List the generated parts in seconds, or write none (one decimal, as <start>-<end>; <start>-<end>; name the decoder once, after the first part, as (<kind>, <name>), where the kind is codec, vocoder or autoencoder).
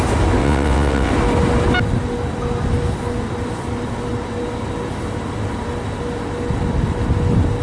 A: 0.4-1.1 (vocoder, WaveNeXt)